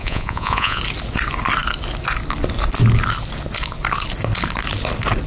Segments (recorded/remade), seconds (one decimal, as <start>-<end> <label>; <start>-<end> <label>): 0.0-0.8 remade; 0.8-5.3 recorded